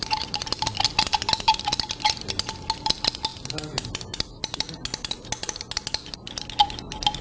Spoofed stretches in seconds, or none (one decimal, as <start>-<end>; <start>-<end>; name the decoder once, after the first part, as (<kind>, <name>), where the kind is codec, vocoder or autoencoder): none